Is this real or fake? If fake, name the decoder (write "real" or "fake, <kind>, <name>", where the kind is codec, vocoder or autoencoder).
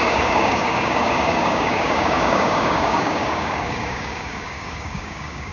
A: fake, codec, DAC